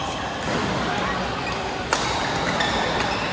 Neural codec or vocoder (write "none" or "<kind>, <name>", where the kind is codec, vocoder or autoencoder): none